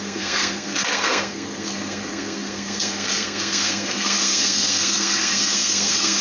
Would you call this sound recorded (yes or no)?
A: no